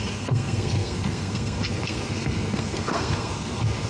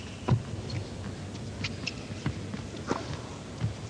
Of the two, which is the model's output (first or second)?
first